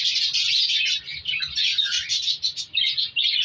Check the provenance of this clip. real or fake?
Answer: real